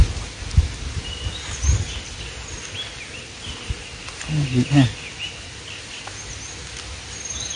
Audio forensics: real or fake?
real